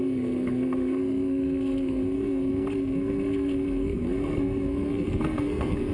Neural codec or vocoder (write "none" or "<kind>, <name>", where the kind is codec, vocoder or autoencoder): codec, SNAC